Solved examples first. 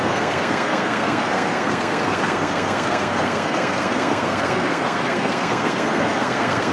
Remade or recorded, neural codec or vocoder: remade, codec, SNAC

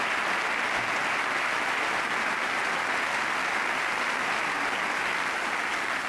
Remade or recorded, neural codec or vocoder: recorded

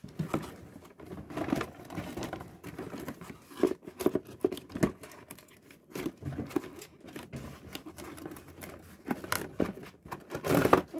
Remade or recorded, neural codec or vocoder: recorded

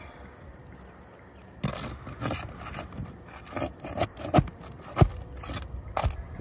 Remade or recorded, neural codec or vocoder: recorded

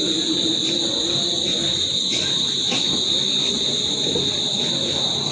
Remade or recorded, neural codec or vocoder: recorded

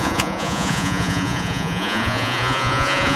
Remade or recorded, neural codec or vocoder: remade, vocoder, Vocos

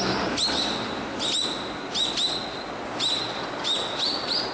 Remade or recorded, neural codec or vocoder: recorded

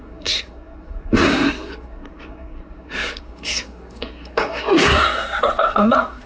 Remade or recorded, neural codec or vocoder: remade, codec, SNAC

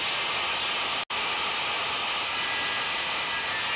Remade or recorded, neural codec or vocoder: recorded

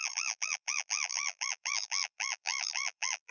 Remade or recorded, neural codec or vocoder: remade, vocoder, BigVGAN v2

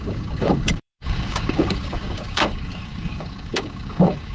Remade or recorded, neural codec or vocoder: remade, codec, DAC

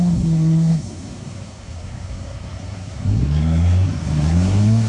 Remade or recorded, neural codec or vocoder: remade, codec, SNAC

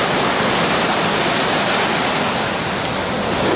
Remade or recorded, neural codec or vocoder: recorded